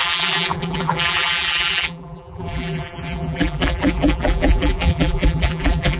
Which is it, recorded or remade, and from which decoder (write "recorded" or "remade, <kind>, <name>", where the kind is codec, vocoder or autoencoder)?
remade, vocoder, BigVGAN v2